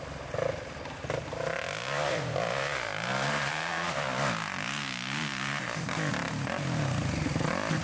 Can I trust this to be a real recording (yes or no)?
yes